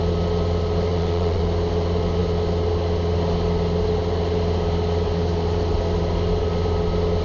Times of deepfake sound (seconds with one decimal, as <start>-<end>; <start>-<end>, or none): 0.9-1.4